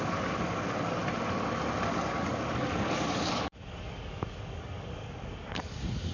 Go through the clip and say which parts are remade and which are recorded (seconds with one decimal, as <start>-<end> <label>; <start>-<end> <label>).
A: 0.0-1.0 remade; 1.0-1.9 recorded; 1.9-6.1 remade